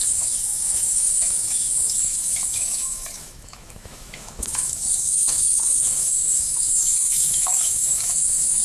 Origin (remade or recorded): remade